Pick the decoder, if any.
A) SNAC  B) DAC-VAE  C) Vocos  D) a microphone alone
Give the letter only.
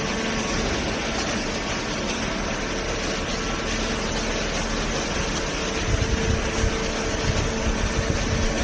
D